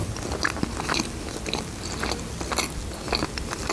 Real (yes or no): yes